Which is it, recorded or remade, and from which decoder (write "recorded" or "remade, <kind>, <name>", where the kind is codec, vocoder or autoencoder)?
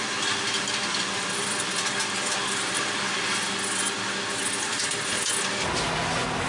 recorded